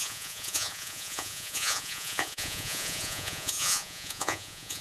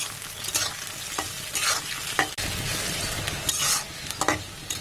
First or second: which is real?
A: second